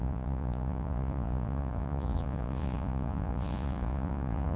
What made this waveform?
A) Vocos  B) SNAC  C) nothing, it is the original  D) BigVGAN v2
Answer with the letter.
A